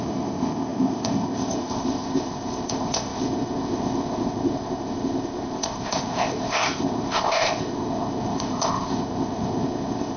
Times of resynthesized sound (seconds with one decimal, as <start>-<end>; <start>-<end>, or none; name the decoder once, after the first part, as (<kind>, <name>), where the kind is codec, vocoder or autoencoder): 0.0-10.2 (codec, ZipCodec)